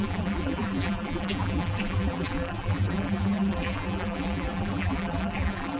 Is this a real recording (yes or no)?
no